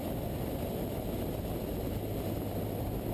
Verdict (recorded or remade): recorded